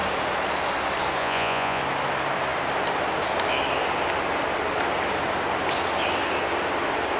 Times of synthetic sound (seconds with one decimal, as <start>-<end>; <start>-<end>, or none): 1.2-1.8